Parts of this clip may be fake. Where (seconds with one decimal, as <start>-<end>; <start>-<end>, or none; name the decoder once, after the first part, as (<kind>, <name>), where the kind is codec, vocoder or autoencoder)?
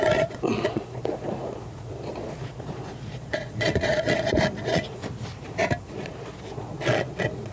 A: 0.0-5.0 (vocoder, Vocos); 5.8-7.5